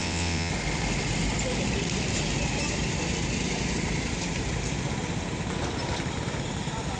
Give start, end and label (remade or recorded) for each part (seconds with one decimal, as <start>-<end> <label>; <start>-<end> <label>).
0.0-0.5 remade; 0.5-7.0 recorded